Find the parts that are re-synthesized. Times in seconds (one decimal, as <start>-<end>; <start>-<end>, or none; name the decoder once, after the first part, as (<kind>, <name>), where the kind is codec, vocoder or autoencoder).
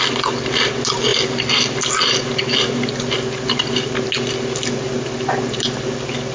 none